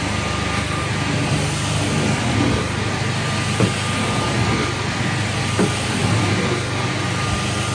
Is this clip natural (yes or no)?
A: yes